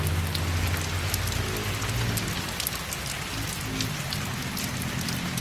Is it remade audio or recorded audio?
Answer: recorded